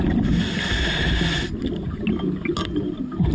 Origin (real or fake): real